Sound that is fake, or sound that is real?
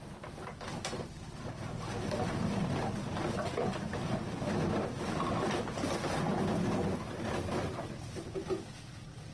real